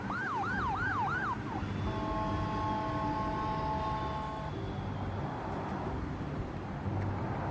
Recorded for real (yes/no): yes